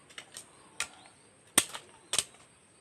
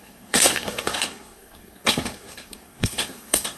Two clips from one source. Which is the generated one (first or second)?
second